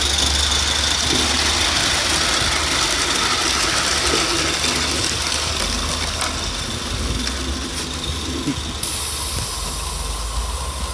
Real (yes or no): yes